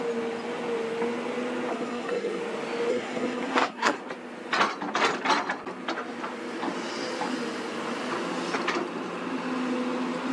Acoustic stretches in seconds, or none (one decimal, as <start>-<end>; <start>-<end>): 0.0-1.7; 2.4-2.9; 4.0-10.3